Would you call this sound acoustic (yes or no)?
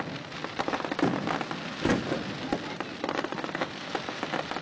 yes